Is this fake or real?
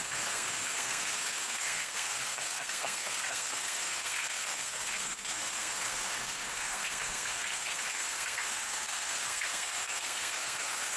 fake